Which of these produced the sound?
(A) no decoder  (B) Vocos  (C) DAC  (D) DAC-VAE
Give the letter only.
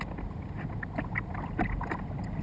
A